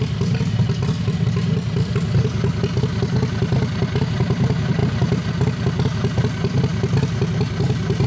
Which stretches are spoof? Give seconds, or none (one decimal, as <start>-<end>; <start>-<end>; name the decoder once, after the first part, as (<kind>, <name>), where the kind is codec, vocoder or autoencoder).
none